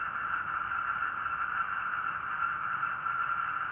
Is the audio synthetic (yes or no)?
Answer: no